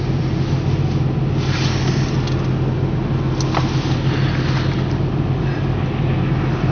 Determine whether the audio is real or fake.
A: real